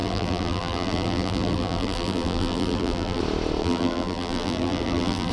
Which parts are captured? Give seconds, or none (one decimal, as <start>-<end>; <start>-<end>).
3.2-3.6